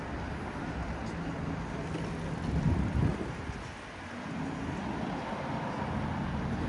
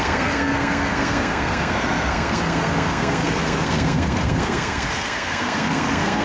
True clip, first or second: first